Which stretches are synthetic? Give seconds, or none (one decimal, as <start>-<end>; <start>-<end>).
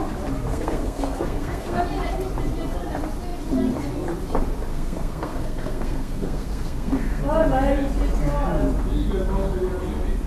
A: 0.5-1.8; 4.7-7.2